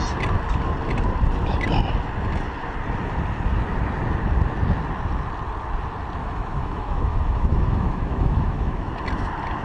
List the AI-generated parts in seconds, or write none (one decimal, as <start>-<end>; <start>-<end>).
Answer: 6.2-8.9